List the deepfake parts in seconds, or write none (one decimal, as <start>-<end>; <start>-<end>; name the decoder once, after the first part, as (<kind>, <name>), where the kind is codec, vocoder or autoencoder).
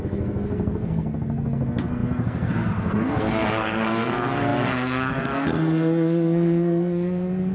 0.0-7.5 (codec, SNAC)